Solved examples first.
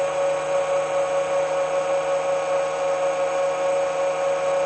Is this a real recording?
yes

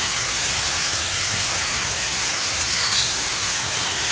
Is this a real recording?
no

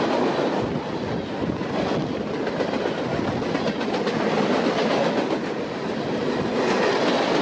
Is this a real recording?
yes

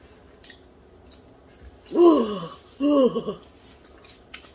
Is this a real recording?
yes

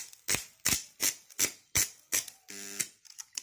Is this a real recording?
yes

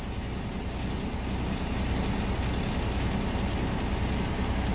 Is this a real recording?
yes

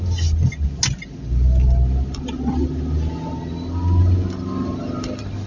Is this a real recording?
yes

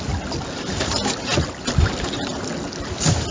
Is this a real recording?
yes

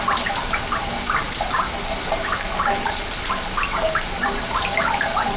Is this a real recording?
yes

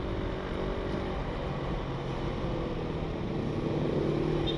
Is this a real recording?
yes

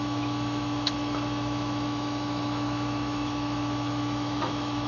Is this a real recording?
no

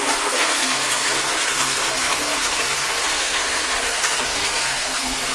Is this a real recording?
no